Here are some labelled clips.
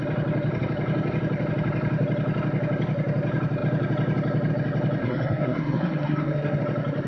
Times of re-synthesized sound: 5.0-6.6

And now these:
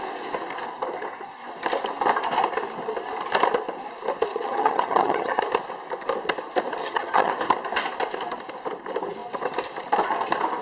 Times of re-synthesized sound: 4.3-5.4; 6.8-7.3